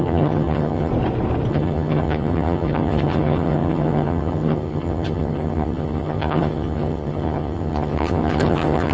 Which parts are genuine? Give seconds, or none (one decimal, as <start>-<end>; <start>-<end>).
0.9-1.5